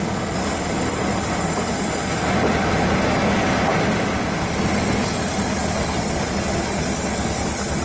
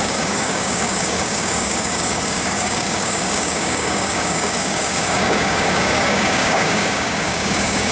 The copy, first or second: second